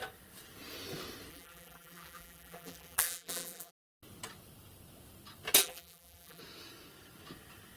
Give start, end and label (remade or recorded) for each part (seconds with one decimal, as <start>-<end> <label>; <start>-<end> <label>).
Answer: 0.0-1.3 recorded; 1.3-3.7 remade; 3.7-5.6 recorded; 5.6-6.4 remade; 6.4-7.8 recorded